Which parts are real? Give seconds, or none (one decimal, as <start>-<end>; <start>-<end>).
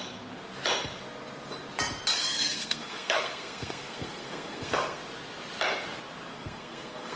0.0-2.2; 5.0-6.3